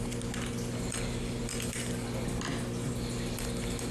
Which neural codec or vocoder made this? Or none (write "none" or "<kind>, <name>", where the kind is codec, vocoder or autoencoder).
none